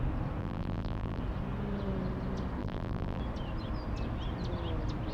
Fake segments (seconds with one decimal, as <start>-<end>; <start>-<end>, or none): 0.4-1.2; 2.6-3.2